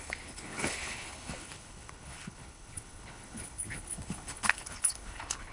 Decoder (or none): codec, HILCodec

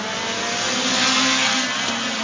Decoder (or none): none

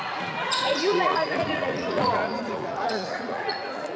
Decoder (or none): vocoder, Vocos